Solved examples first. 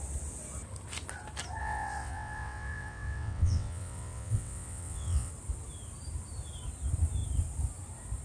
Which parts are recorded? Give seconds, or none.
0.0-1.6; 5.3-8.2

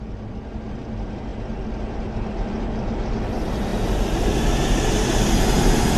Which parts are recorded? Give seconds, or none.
0.0-6.0

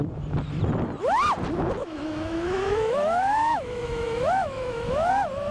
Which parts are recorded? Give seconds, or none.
0.0-1.8; 5.1-5.5

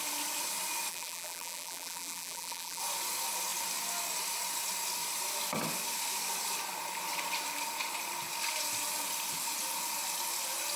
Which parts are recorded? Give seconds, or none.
0.0-0.9; 2.8-10.8